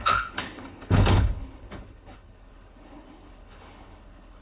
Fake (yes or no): yes